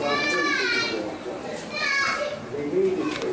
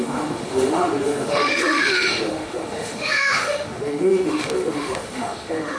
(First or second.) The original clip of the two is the first